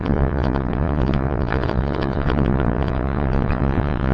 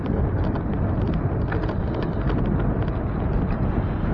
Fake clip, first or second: first